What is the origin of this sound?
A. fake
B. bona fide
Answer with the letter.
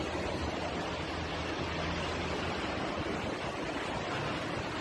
B